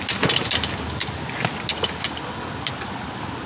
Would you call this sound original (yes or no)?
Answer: yes